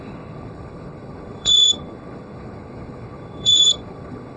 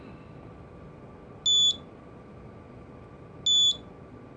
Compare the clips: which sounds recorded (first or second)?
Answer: second